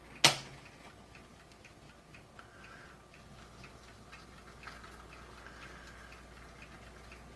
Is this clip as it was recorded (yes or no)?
yes